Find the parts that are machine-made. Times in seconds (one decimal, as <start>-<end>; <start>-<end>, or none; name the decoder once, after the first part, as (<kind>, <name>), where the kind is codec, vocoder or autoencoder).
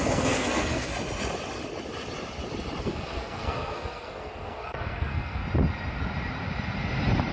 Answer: 0.0-0.9 (codec, SNAC); 2.8-5.4